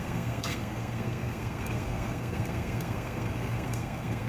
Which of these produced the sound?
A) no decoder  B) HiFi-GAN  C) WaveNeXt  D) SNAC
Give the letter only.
D